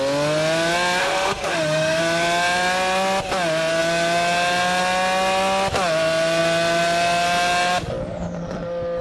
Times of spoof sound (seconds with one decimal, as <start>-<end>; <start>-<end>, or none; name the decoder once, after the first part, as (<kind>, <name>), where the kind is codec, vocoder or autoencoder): 1.0-2.0 (autoencoder, DAC-VAE)